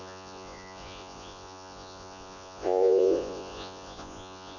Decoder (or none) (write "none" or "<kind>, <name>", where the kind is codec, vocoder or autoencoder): vocoder, Vocos